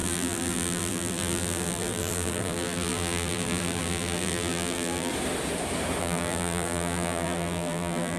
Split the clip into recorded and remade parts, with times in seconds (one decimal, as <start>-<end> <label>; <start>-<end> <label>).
0.0-5.1 remade; 5.1-6.0 recorded; 6.0-8.2 remade

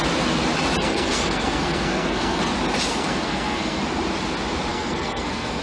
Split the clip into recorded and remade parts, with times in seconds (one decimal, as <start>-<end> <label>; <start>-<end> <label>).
0.0-0.8 recorded; 0.8-2.5 remade; 2.5-2.9 recorded; 2.9-3.8 remade; 3.8-4.7 recorded; 4.7-5.6 remade

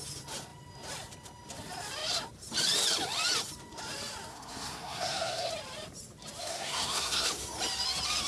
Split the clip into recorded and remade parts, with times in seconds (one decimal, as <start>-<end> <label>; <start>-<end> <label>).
0.0-4.3 recorded; 4.3-5.5 remade; 5.5-6.4 recorded; 6.4-7.3 remade; 7.3-8.3 recorded